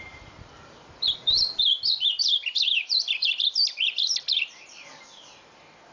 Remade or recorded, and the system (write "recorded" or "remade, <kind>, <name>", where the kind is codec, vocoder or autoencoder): remade, vocoder, BigVGAN v2